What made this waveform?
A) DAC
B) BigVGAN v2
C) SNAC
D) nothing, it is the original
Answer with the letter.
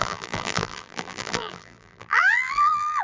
B